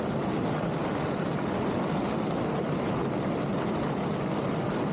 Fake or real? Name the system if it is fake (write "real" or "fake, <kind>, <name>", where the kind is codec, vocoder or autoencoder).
real